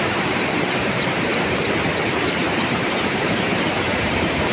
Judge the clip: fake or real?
fake